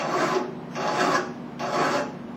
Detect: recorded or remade recorded